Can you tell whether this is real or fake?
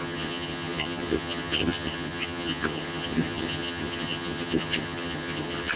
fake